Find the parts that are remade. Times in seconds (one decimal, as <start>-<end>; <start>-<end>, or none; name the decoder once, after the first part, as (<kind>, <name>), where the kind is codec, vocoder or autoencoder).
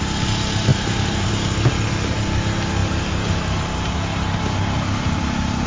0.7-1.3 (vocoder, BigVGAN v2); 2.8-5.7